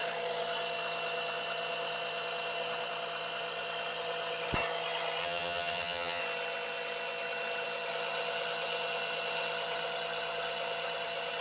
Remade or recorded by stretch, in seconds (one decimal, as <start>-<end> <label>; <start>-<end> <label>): 0.0-5.2 recorded; 5.2-6.2 remade; 6.2-11.4 recorded